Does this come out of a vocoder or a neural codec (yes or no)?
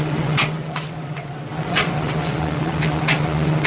yes